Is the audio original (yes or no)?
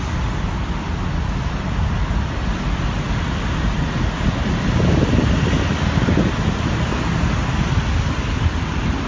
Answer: yes